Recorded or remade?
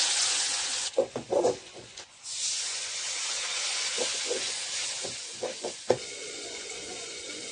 remade